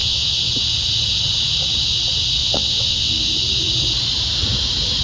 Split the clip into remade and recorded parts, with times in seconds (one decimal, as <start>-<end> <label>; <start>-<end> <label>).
0.0-0.5 remade; 0.5-2.4 recorded; 2.4-3.1 remade; 3.1-5.0 recorded